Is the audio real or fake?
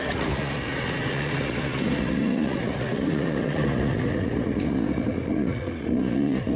fake